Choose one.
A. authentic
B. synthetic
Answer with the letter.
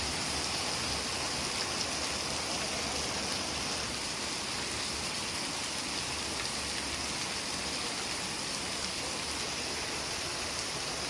A